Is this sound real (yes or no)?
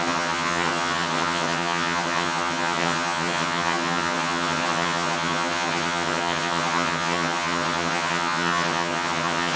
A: no